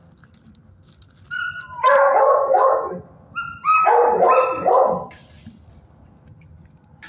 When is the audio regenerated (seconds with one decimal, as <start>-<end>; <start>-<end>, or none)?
3.6-5.3